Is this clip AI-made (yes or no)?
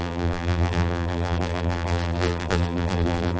yes